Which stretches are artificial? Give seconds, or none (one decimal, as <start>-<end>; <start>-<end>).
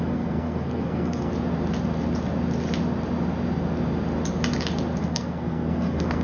0.0-1.3; 5.0-6.2